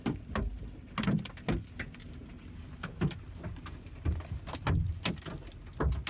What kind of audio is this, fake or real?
real